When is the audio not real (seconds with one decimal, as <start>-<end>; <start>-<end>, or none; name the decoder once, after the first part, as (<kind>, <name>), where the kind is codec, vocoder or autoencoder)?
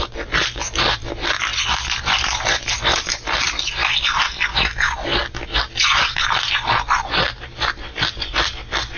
none